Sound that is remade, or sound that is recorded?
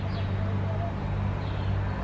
recorded